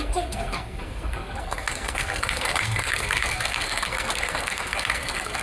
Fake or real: fake